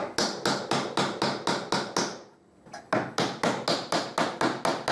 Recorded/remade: recorded